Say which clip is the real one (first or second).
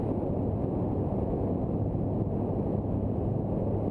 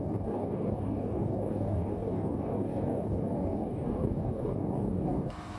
first